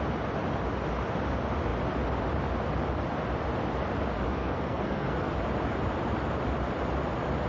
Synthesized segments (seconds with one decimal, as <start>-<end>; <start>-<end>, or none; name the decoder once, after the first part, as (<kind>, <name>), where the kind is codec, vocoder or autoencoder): 4.3-5.3 (codec, SNAC)